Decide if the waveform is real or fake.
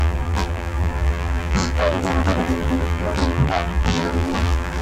fake